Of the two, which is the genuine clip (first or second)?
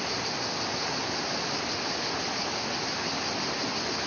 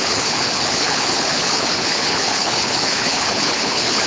first